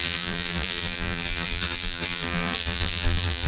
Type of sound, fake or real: fake